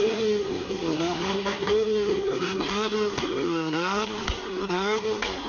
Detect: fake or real fake